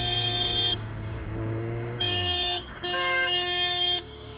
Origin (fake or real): fake